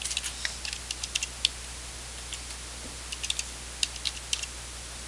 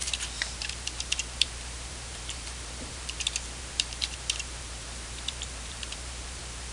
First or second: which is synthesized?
second